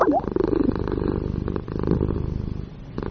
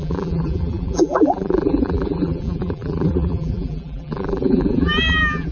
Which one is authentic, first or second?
first